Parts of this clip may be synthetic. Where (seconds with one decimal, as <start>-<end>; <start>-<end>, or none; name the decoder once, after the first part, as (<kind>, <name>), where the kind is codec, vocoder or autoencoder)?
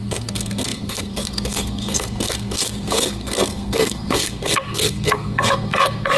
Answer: 0.0-6.2 (codec, SNAC)